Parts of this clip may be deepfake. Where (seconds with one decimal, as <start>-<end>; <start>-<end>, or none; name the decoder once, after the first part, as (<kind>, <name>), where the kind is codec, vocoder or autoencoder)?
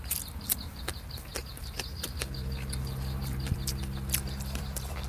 none